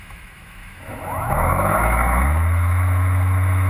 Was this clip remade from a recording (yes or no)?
yes